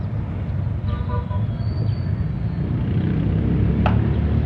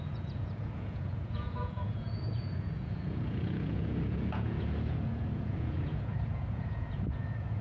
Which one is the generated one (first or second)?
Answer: second